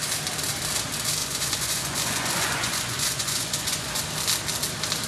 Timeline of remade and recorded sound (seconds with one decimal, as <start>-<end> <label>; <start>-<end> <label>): 0.0-1.2 recorded; 1.2-4.0 remade; 4.0-5.1 recorded